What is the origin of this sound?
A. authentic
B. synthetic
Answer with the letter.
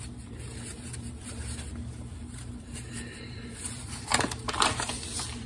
B